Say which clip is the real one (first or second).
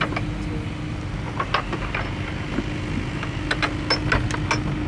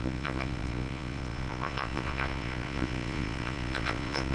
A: first